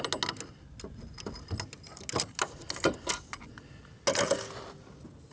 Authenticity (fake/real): real